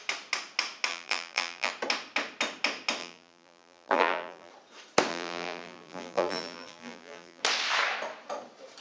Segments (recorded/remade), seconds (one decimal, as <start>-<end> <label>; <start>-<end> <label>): 0.0-0.9 recorded; 0.9-1.7 remade; 1.7-3.0 recorded; 3.0-4.5 remade; 4.5-5.1 recorded; 5.1-7.4 remade; 7.4-8.8 recorded